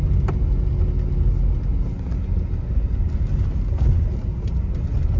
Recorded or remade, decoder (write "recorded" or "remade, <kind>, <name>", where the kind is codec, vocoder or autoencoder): recorded